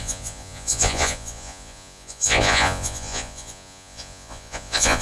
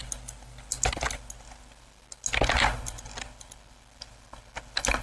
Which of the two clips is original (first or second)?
second